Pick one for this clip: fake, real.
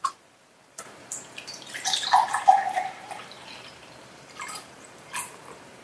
fake